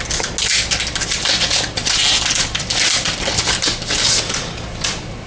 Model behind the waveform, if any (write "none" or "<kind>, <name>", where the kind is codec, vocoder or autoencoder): none